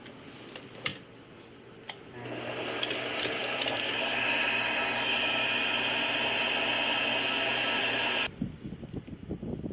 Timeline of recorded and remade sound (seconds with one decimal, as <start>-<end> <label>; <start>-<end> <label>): 0.0-9.7 recorded